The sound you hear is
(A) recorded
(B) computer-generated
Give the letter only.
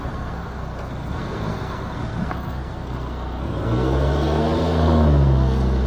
B